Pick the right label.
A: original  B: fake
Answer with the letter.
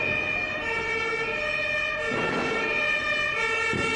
A